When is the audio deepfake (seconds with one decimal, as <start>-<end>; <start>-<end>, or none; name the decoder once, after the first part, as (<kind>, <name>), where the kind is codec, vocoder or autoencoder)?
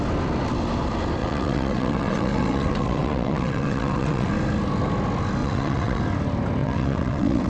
1.2-4.3 (vocoder, WaveNeXt); 5.4-6.0; 6.6-7.5